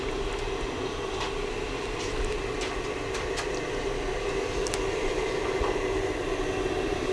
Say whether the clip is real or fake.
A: real